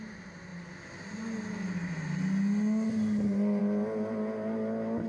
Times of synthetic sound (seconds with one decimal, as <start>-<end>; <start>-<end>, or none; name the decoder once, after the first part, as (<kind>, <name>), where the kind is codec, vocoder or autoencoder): none